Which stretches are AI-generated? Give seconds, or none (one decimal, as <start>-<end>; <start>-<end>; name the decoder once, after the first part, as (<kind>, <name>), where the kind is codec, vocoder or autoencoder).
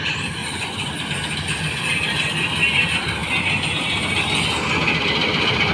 0.4-1.1 (vocoder, Vocos)